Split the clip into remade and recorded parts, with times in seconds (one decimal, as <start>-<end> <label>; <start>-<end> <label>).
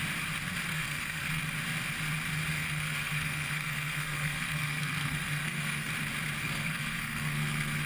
0.0-0.7 recorded; 0.7-1.4 remade; 1.4-2.5 recorded; 2.5-5.9 remade; 5.9-6.4 recorded; 6.4-7.9 remade